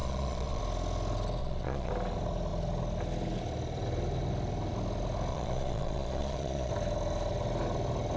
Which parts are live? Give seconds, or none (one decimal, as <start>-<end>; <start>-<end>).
0.6-1.4; 1.9-5.3; 6.7-8.2